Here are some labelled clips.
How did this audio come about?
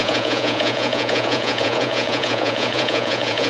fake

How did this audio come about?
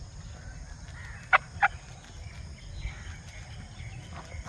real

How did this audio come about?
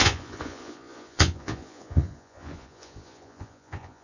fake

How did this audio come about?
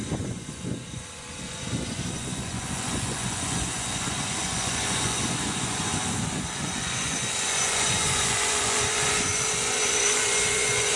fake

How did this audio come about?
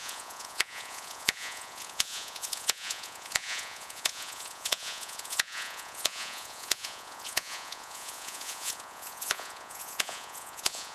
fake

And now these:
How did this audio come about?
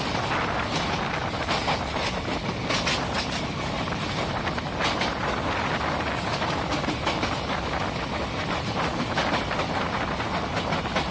real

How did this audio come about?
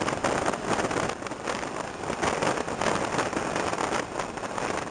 real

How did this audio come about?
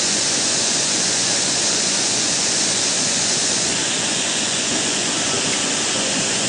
fake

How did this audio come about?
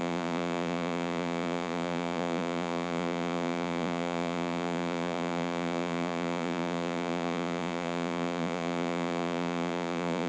fake